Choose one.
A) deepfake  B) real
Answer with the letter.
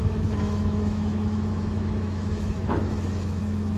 A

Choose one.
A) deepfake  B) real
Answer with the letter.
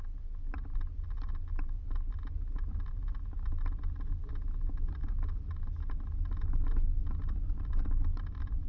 B